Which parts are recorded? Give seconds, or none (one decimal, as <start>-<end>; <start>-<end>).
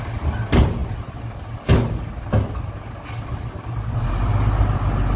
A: 0.0-5.2